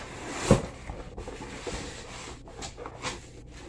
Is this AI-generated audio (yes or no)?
no